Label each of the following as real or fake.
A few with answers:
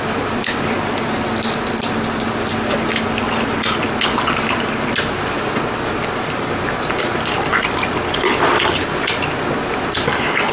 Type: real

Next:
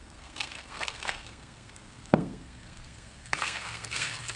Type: fake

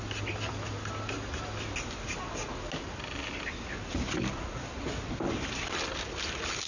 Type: real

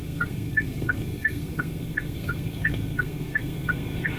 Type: fake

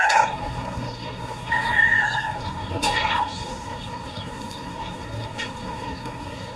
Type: fake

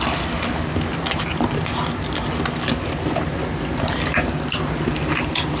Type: real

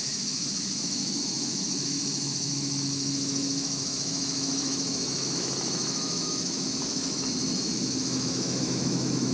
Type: fake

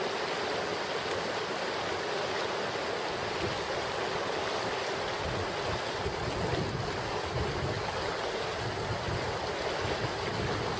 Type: real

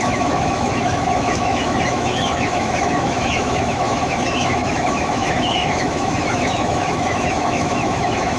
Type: fake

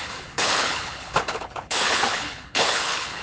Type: fake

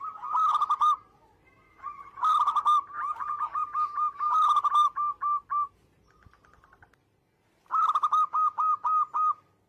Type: real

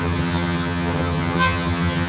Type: fake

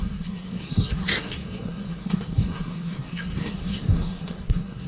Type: fake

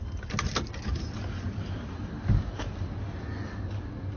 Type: real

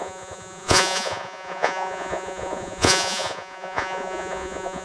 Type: fake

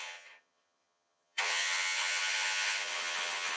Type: fake